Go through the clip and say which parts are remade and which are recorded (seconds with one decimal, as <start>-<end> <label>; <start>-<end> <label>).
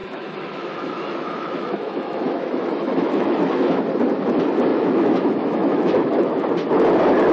0.0-3.8 remade; 3.8-4.7 recorded; 4.7-6.3 remade; 6.3-7.3 recorded